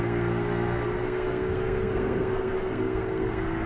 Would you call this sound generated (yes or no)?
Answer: yes